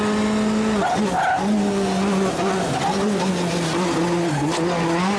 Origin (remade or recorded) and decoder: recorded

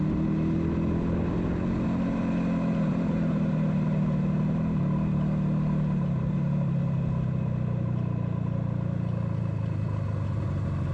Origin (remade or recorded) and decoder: recorded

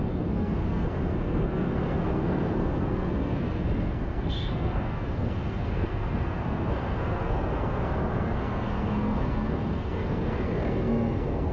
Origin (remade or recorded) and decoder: remade, codec, SNAC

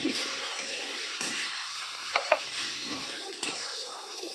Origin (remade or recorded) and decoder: remade, codec, SNAC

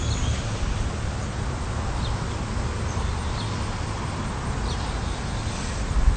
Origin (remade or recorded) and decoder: recorded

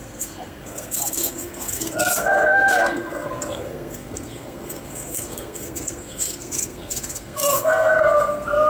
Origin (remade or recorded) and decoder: remade, codec, SNAC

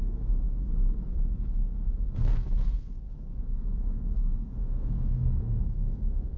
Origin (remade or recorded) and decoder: remade, codec, SNAC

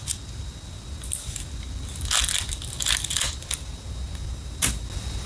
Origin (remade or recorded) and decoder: recorded